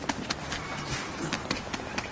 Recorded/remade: recorded